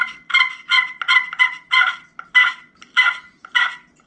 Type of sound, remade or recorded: recorded